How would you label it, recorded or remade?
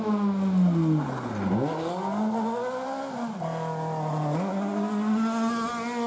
recorded